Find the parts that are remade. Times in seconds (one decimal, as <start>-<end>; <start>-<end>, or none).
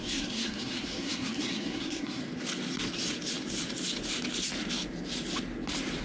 0.0-2.2